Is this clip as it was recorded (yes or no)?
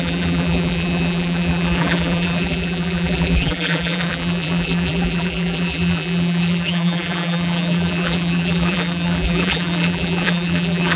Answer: no